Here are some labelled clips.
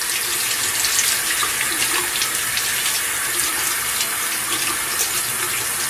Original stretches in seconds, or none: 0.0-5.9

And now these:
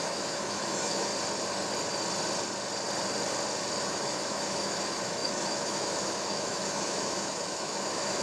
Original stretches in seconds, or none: 1.1-3.8

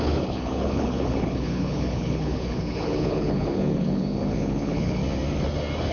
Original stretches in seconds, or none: 5.0-5.9

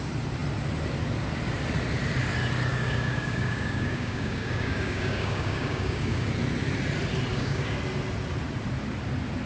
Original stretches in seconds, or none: 0.0-2.7; 6.3-7.3; 7.8-9.5

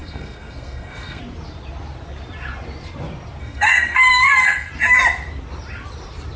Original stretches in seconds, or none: 1.2-3.4; 4.7-6.4